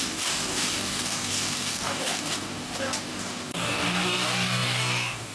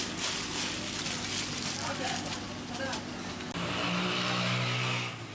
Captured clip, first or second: second